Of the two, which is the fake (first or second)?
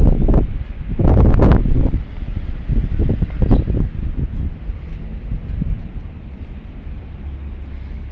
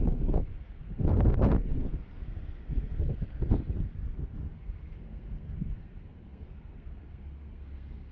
second